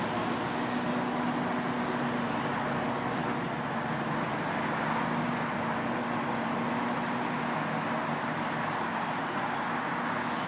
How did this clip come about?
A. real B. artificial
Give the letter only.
A